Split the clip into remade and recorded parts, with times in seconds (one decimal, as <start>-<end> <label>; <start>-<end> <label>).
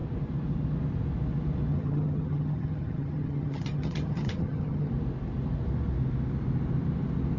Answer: 0.0-1.7 recorded; 1.7-4.9 remade; 4.9-7.4 recorded